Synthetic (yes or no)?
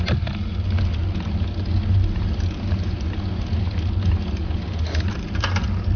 no